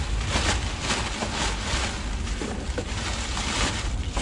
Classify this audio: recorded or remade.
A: recorded